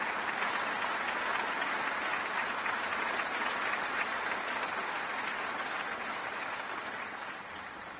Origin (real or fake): real